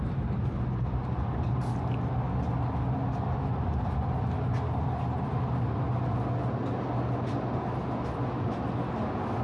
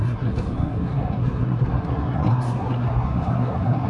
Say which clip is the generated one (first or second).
second